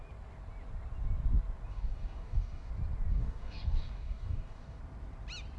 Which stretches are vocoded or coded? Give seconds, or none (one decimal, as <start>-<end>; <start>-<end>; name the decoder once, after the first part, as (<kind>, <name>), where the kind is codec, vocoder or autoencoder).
1.7-2.7 (codec, DAC); 3.1-4.8